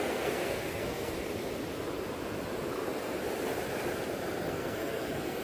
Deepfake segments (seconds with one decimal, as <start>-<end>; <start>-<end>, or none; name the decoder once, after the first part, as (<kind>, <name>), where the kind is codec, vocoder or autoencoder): 0.0-1.2 (codec, SNAC); 4.4-5.4